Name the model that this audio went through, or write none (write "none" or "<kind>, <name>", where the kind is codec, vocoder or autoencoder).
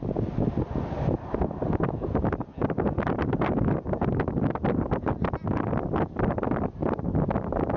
none